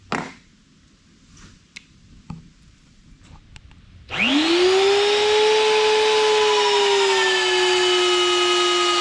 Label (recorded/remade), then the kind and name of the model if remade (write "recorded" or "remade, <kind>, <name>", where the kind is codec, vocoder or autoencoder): recorded